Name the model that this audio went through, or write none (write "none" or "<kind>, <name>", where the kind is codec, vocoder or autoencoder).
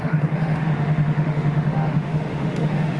autoencoder, DAC-VAE